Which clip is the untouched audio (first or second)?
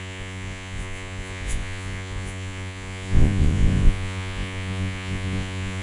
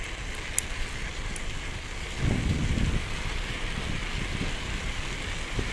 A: second